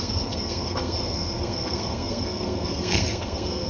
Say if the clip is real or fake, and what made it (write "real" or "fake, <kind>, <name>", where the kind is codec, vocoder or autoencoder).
fake, codec, SNAC